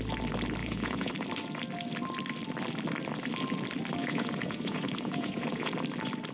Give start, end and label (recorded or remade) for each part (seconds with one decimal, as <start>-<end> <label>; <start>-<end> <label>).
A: 0.0-0.6 recorded; 0.6-1.1 remade; 1.1-4.0 recorded; 4.0-5.7 remade; 5.7-6.3 recorded